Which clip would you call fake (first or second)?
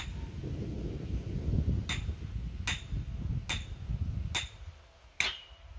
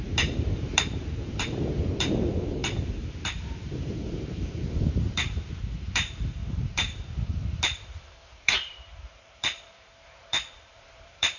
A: second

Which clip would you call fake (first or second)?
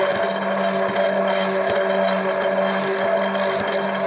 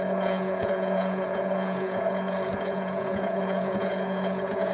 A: second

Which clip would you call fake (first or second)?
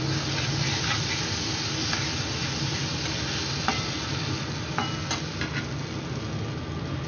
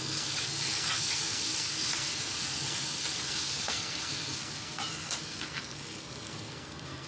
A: second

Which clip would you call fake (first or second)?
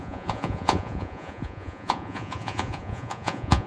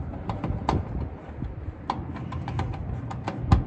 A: first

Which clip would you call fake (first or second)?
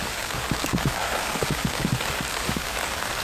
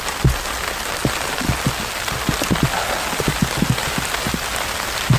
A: first